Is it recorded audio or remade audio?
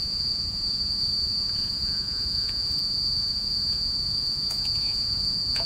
remade